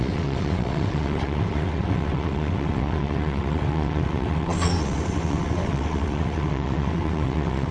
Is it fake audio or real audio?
fake